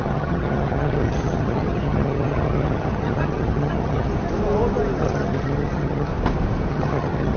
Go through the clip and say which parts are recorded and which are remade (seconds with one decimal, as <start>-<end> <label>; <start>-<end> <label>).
0.0-4.1 remade; 4.1-5.0 recorded; 5.0-6.1 remade; 6.1-6.7 recorded; 6.7-7.4 remade

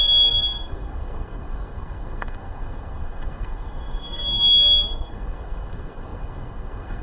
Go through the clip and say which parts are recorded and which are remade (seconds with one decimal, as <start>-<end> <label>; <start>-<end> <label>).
0.0-7.0 remade

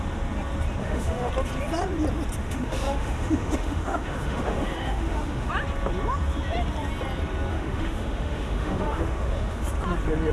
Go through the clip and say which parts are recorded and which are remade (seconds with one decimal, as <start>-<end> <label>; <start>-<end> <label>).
0.0-0.8 recorded; 0.8-1.3 remade; 1.3-2.4 recorded; 2.4-5.5 remade; 5.5-7.5 recorded; 7.5-9.6 remade; 9.6-10.3 recorded

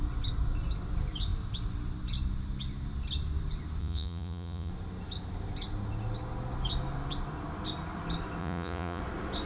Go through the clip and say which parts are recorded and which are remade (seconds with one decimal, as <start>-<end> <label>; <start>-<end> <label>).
0.0-3.8 recorded; 3.8-4.7 remade; 4.7-8.4 recorded; 8.4-9.0 remade; 9.0-9.5 recorded

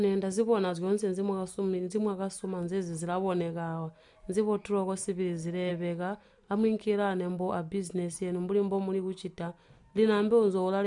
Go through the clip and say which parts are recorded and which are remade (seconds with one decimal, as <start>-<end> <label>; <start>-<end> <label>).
0.0-10.9 recorded